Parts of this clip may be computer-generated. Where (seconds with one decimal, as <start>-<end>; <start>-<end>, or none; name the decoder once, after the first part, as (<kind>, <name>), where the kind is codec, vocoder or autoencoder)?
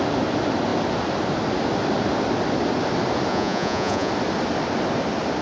3.3-4.1 (vocoder, Vocos)